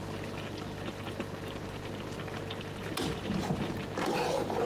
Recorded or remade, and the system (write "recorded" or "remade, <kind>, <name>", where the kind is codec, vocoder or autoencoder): recorded